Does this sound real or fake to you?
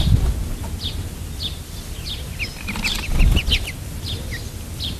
real